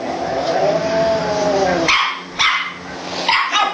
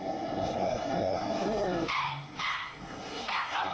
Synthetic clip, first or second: second